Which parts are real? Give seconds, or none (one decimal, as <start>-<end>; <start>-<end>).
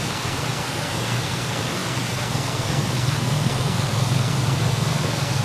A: none